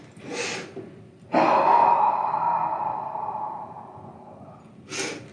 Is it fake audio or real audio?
real